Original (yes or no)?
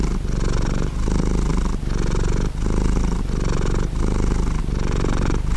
yes